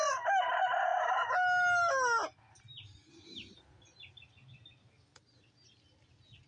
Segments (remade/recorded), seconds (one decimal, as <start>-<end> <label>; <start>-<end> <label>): 0.0-6.5 recorded